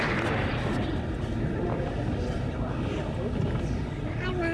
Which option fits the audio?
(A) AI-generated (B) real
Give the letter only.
B